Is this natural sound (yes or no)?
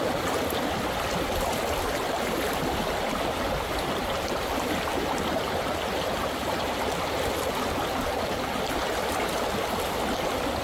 yes